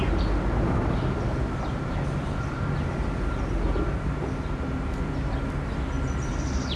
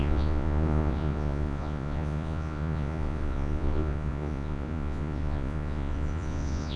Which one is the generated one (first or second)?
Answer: second